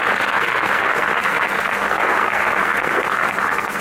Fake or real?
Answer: fake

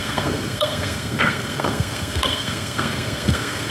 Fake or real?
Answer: fake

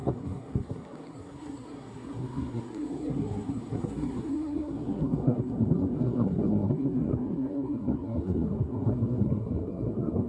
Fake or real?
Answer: fake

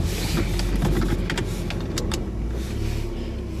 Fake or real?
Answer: real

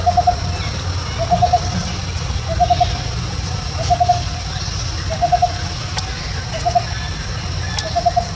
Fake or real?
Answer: real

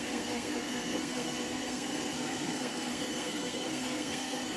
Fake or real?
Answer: fake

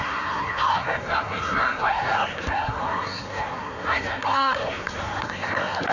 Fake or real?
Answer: fake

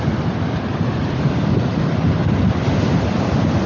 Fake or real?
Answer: real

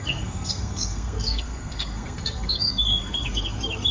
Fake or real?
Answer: fake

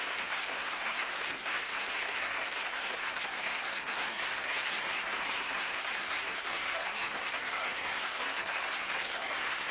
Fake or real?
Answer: fake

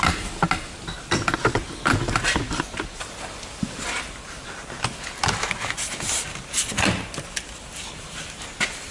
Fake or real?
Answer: real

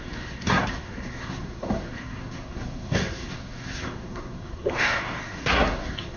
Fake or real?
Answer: fake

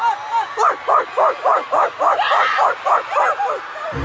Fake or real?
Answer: real